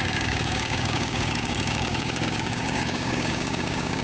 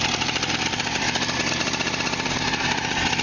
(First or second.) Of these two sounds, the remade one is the first